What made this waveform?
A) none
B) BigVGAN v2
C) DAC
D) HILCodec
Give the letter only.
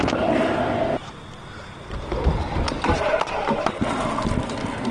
A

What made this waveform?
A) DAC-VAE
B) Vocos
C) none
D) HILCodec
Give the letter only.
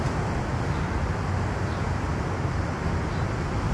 C